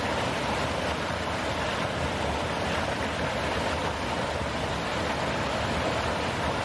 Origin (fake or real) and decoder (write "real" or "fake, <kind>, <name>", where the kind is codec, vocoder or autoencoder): real